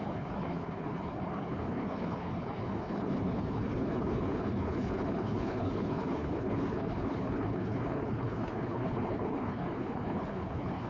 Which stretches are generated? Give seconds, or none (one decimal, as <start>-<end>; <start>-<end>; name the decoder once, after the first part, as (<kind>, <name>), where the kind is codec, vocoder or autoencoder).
0.0-10.9 (codec, HILCodec)